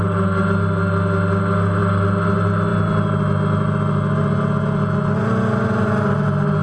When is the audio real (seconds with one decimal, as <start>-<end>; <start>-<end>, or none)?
0.0-6.6